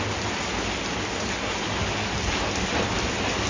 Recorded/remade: recorded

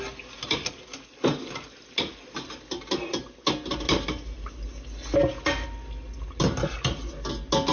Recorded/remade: recorded